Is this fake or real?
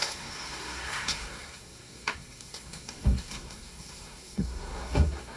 fake